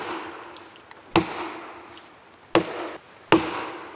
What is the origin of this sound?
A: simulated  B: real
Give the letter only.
B